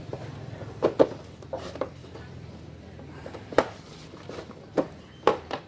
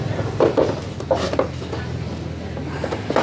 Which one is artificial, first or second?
first